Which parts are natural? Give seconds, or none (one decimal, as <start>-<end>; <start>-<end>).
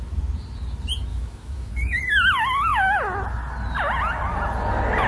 0.0-1.1; 2.0-5.1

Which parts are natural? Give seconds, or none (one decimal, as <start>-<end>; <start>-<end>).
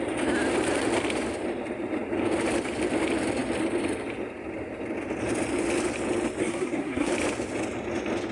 0.0-6.4; 7.1-8.3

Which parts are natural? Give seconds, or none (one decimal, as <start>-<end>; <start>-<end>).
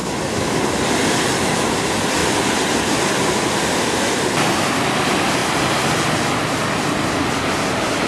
0.0-2.2; 4.2-5.4; 6.1-8.1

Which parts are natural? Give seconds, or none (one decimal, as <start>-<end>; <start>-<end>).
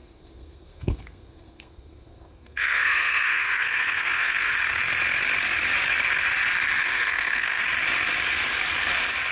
4.5-6.8; 7.6-9.3